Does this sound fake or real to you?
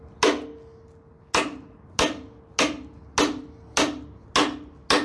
real